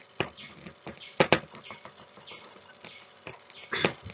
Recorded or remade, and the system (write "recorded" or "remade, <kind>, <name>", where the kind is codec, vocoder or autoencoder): recorded